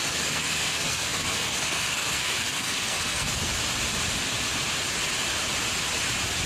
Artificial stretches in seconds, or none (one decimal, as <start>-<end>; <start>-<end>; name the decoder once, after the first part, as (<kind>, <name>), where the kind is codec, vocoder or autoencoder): 0.0-3.5 (codec, SNAC)